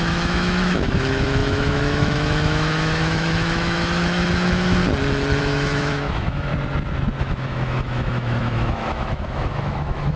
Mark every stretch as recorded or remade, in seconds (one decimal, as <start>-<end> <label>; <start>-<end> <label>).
0.0-4.8 remade; 4.8-5.4 recorded; 5.4-6.5 remade; 6.5-7.2 recorded; 7.2-10.2 remade